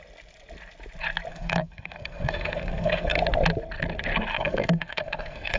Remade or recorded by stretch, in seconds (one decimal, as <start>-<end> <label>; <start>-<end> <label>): 0.0-1.3 recorded; 1.3-3.2 remade; 3.2-4.3 recorded; 4.3-5.6 remade